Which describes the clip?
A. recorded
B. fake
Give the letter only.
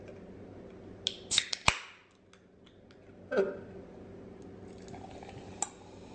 A